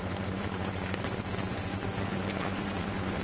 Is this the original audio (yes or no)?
no